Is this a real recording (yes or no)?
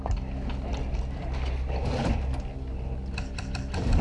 yes